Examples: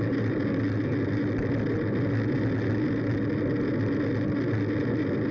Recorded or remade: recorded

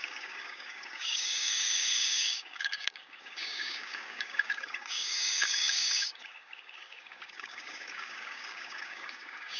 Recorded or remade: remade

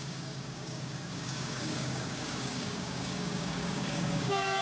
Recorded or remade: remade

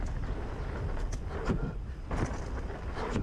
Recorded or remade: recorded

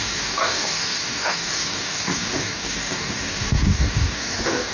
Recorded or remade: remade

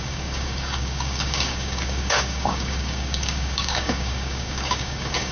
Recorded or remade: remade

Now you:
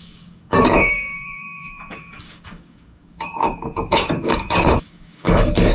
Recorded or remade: remade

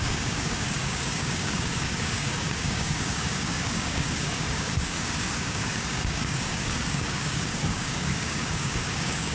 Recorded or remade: remade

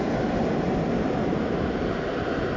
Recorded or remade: recorded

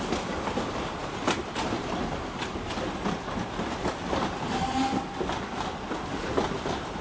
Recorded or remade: recorded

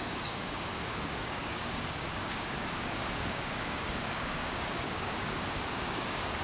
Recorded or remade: remade